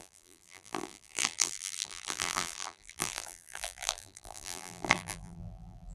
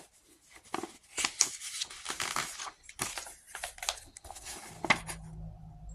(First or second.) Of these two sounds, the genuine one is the second